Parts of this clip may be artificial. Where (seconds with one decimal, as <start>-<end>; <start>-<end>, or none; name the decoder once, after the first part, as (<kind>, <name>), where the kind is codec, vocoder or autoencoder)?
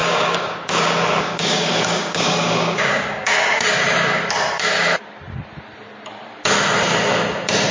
0.0-4.2 (codec, DAC)